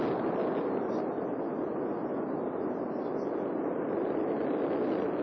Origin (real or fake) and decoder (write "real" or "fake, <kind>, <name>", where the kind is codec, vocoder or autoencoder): real